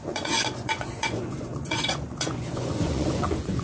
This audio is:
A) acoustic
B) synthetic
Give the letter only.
B